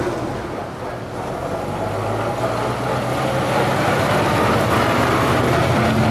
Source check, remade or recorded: recorded